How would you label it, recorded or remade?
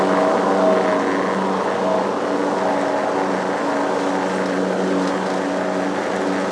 recorded